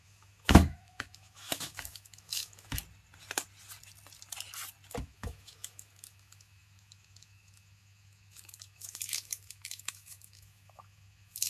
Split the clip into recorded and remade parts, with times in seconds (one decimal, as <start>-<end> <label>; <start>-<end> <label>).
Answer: 0.0-2.8 remade; 2.8-5.0 recorded; 5.0-11.5 remade